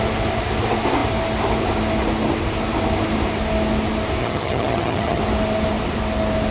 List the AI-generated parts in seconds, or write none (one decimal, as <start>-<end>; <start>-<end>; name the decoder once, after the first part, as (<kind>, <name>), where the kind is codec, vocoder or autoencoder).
4.2-5.2 (vocoder, HiFi-GAN)

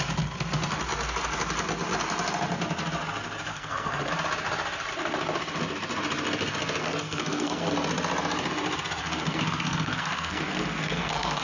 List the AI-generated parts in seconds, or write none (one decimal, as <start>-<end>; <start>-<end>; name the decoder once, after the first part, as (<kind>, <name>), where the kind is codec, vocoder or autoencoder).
3.5-4.1 (codec, SNAC); 6.8-7.7; 9.0-11.4

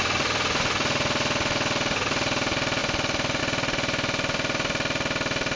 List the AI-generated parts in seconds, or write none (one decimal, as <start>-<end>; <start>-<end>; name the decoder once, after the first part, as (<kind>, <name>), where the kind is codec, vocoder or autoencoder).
none